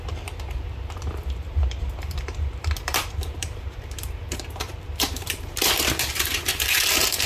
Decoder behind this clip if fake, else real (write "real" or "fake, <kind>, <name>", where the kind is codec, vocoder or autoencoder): fake, vocoder, BigVGAN v2